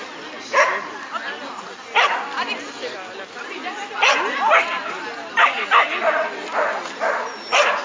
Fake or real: real